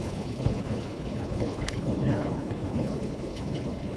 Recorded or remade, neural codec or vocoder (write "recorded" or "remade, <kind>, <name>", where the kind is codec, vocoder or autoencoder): remade, codec, HILCodec